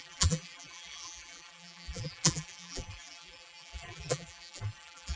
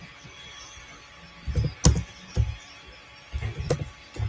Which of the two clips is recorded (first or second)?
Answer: second